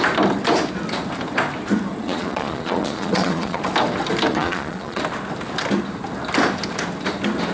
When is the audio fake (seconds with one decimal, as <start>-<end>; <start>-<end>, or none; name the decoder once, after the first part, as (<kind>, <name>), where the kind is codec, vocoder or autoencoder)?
2.0-3.6 (vocoder, Vocos); 4.3-5.0